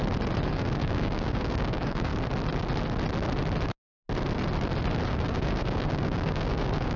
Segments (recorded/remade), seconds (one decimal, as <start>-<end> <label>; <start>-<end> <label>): 0.0-0.5 recorded; 0.5-2.1 remade; 2.1-5.1 recorded; 5.1-7.0 remade